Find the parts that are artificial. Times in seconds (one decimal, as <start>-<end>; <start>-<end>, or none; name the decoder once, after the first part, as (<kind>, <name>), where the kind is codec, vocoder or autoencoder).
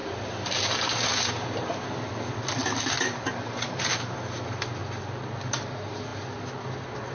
none